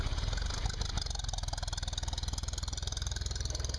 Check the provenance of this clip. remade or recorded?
recorded